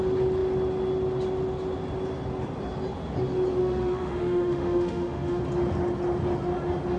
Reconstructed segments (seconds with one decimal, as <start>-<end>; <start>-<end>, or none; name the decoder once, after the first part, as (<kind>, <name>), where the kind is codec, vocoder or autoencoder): 3.6-5.4 (autoencoder, DAC-VAE)